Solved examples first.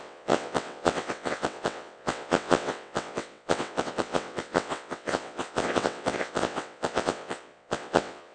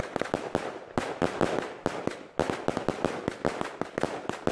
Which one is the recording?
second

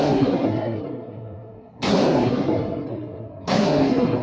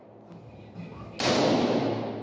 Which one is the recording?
second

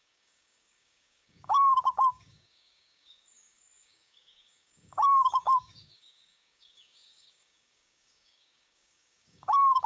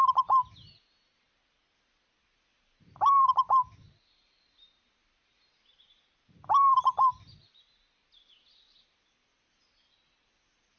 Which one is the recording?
second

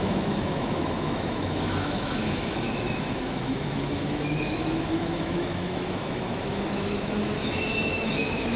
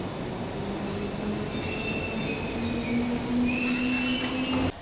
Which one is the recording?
second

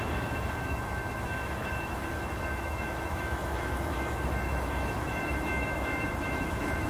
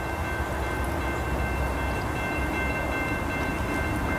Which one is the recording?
second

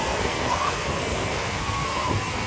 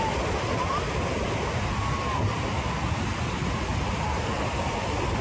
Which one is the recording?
second